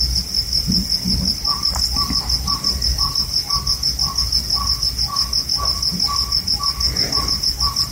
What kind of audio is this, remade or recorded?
recorded